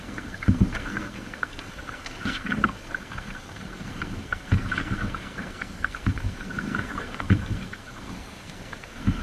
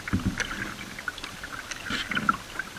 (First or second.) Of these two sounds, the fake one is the first